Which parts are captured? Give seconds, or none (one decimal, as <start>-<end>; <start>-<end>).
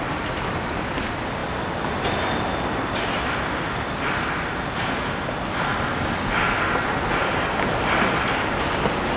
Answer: 0.0-9.2